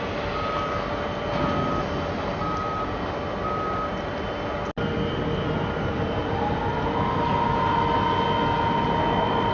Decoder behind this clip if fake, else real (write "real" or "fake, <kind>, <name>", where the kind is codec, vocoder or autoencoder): real